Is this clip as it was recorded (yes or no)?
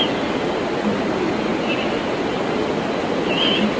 yes